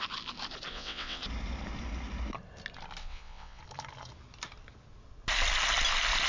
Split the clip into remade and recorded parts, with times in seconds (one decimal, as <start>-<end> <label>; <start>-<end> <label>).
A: 0.0-0.7 recorded; 0.7-1.2 remade; 1.2-3.0 recorded; 3.0-3.6 remade; 3.6-6.3 recorded